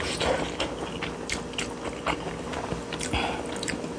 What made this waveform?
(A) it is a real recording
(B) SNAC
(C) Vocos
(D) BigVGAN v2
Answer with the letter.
A